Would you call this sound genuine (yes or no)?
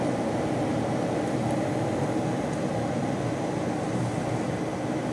yes